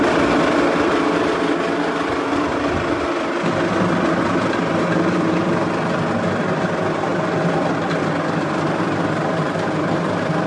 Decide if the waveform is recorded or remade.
recorded